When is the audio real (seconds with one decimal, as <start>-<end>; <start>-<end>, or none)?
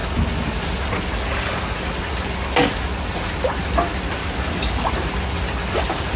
0.0-4.2; 4.9-6.2